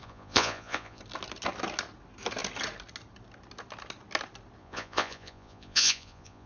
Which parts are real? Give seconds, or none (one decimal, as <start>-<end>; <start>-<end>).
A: 1.0-4.6